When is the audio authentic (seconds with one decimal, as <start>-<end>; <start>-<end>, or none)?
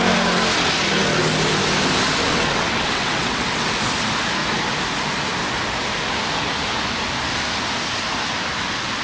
0.0-2.3; 3.7-9.0